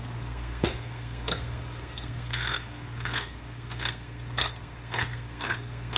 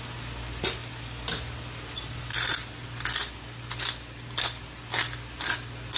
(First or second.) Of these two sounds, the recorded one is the second